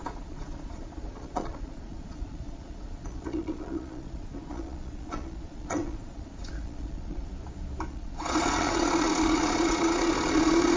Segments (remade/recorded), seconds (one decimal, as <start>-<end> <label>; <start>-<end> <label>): 0.0-7.3 remade; 7.3-7.9 recorded; 7.9-10.8 remade